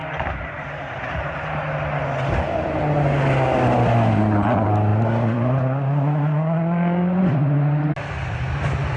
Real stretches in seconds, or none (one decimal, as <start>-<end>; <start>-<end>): 0.0-9.0